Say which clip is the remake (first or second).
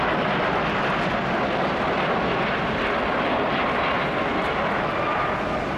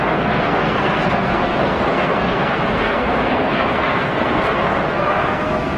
second